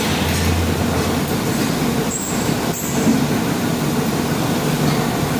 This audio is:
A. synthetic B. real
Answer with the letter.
B